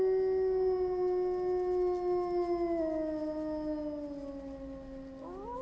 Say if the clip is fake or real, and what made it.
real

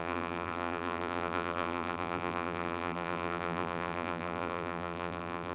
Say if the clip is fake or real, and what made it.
fake, vocoder, BigVGAN v2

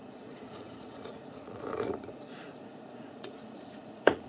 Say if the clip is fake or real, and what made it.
fake, vocoder, Vocos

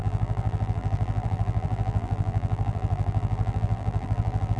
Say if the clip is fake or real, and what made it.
fake, vocoder, BigVGAN v2